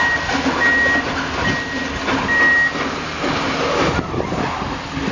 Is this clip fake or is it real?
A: real